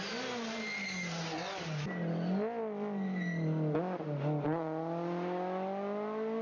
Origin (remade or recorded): recorded